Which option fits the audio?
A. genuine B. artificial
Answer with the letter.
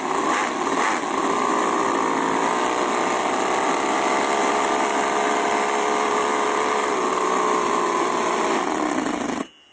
A